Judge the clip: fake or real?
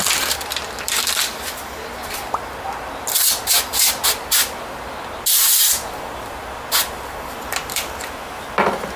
real